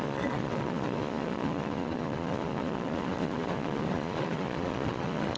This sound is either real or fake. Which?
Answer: fake